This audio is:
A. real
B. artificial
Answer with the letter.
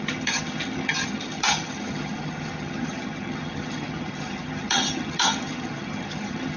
B